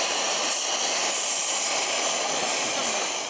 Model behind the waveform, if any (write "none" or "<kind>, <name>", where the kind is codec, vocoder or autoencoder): none